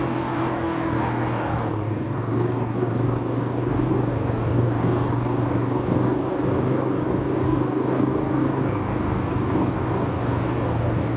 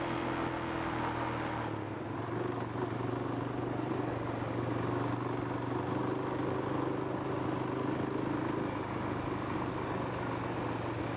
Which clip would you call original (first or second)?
second